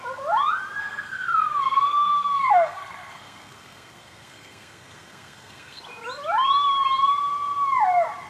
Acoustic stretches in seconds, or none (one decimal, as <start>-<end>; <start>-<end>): 0.0-0.8; 5.8-8.3